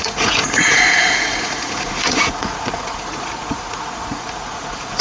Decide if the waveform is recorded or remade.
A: remade